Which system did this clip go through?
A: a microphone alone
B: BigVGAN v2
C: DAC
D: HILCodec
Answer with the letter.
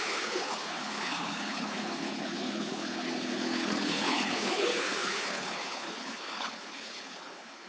D